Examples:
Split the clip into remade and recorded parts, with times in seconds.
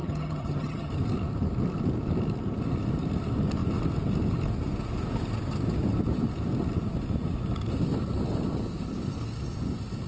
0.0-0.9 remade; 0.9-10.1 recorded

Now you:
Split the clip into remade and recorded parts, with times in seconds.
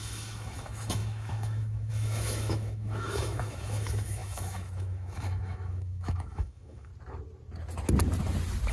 0.0-6.9 remade; 6.9-8.7 recorded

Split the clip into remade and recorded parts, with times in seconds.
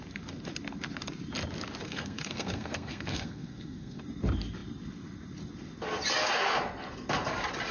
0.0-1.8 recorded; 1.8-4.0 remade; 4.0-7.7 recorded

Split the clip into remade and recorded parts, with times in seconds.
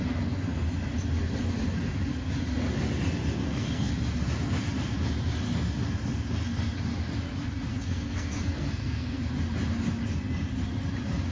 0.0-3.4 recorded; 3.4-3.9 remade; 3.9-7.7 recorded; 7.7-9.2 remade; 9.2-11.3 recorded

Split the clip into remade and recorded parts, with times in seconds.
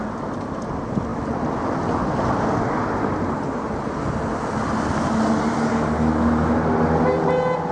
0.0-7.7 recorded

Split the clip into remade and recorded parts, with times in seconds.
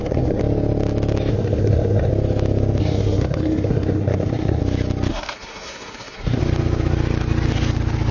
0.0-0.4 remade; 0.4-1.3 recorded; 1.3-2.1 remade; 2.1-2.8 recorded; 2.8-4.6 remade; 4.6-5.1 recorded; 5.1-6.4 remade; 6.4-8.1 recorded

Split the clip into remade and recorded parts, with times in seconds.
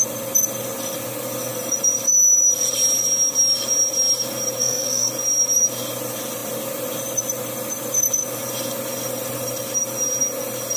0.0-4.6 recorded; 4.6-5.1 remade; 5.1-10.8 recorded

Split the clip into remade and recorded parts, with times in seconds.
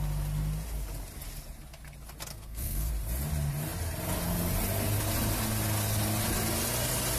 0.0-2.3 recorded; 2.3-2.9 remade; 2.9-7.2 recorded